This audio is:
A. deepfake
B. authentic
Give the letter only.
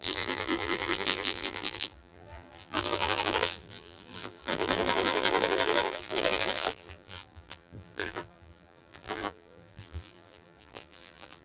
A